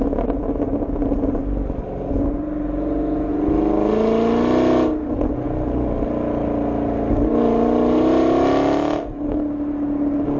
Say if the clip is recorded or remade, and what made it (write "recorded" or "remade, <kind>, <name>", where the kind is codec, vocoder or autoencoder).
recorded